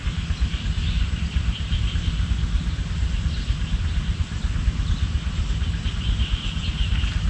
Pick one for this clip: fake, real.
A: real